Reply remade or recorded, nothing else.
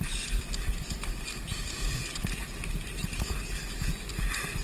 recorded